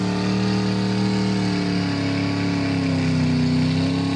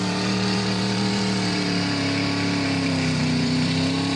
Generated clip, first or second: second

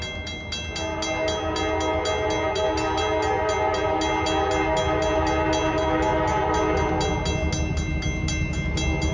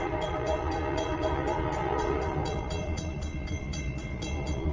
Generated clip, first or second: second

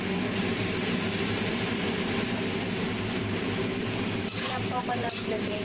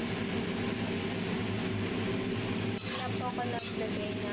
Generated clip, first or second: first